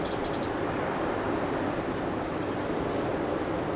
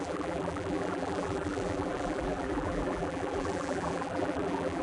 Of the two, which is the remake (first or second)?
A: second